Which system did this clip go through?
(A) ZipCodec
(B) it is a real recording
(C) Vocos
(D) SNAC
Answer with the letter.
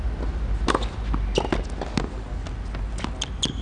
B